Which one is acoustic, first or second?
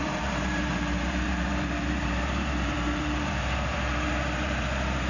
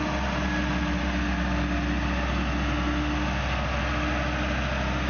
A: second